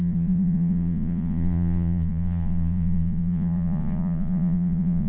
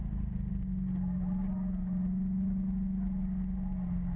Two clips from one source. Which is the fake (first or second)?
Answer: first